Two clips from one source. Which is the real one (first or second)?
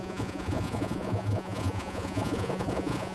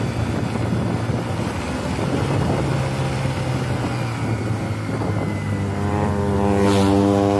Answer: second